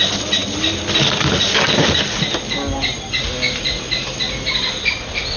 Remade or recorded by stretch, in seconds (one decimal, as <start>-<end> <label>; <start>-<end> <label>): 0.0-5.4 recorded